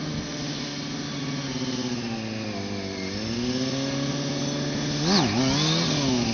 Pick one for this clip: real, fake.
real